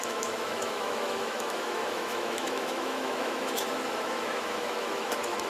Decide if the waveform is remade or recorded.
remade